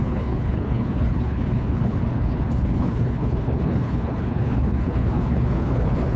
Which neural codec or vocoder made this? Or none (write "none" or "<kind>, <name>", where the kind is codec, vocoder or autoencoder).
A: codec, HILCodec